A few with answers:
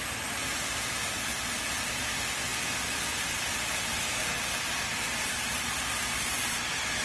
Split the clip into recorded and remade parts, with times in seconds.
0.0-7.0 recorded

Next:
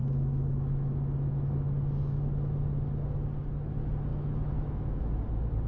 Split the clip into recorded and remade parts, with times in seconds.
0.0-2.0 remade; 2.0-4.1 recorded; 4.1-5.1 remade; 5.1-5.7 recorded

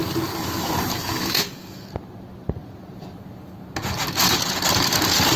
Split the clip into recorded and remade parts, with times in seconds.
0.0-1.0 recorded; 1.0-1.9 remade; 1.9-5.4 recorded

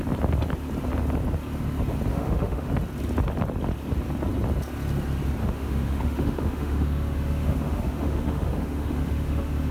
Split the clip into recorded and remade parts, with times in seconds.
0.0-2.1 recorded; 2.1-2.7 remade; 2.7-5.4 recorded; 5.4-9.7 remade

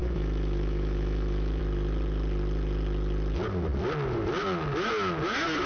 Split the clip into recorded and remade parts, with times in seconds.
0.0-1.6 remade; 1.6-5.7 recorded

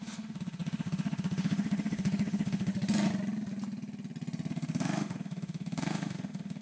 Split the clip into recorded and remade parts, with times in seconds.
0.0-2.7 remade; 2.7-4.5 recorded; 4.5-6.6 remade

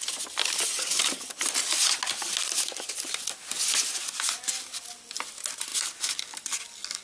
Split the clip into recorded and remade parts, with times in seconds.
0.0-7.0 recorded